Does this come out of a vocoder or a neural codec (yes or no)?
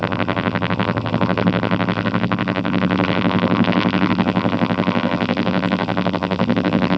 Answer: yes